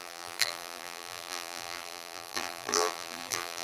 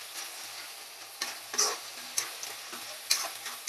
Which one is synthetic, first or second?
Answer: first